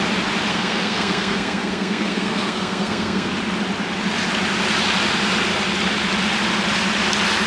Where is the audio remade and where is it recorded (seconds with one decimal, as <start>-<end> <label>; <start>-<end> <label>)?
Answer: 0.0-0.5 recorded; 0.5-3.3 remade; 3.3-7.5 recorded